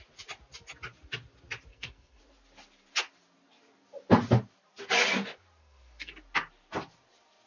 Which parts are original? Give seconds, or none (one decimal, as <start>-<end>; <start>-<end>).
0.0-1.7; 2.2-5.6; 6.1-7.5